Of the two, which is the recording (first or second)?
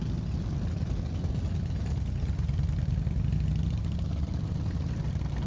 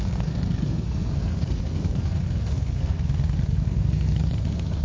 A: first